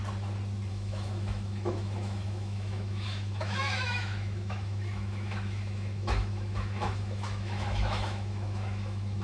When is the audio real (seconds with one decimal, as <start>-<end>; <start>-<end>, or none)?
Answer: 0.0-0.7